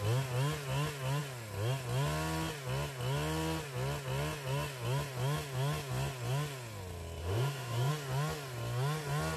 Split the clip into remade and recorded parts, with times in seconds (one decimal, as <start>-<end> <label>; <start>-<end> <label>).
0.0-7.2 recorded; 7.2-7.9 remade; 7.9-9.4 recorded